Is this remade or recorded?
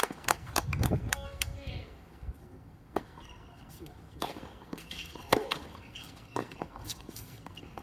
remade